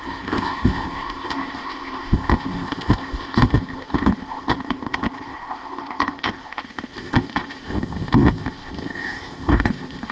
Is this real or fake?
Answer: fake